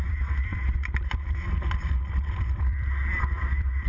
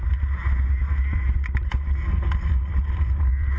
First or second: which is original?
second